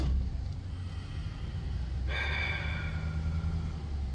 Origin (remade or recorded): recorded